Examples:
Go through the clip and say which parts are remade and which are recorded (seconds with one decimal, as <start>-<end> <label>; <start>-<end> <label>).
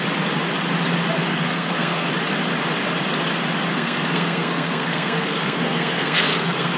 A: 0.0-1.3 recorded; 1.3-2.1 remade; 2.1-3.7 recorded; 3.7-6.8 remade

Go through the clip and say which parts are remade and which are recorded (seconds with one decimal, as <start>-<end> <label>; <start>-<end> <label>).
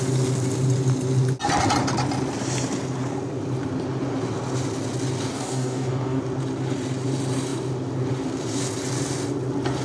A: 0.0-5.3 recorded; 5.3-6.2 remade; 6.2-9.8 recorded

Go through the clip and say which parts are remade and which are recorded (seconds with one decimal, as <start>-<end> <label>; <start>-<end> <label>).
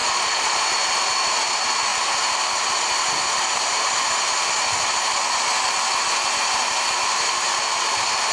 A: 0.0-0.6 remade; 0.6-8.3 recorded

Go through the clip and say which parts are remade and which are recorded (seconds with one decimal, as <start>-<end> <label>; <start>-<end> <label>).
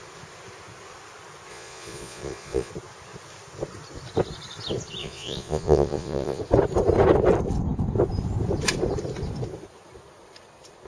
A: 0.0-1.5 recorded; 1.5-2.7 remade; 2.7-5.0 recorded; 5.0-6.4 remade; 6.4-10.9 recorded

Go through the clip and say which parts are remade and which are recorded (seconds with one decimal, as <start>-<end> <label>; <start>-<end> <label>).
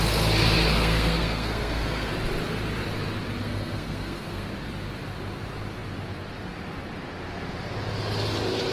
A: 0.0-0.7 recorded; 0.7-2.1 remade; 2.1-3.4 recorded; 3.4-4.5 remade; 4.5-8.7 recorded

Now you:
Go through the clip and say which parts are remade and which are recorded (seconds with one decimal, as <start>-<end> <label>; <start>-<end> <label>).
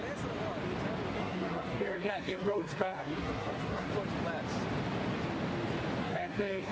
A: 0.0-1.1 recorded; 1.1-3.9 remade; 3.9-6.0 recorded; 6.0-6.7 remade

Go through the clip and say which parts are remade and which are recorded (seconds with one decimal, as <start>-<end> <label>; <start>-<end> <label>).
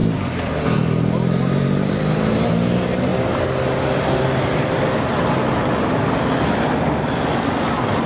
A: 0.0-8.1 recorded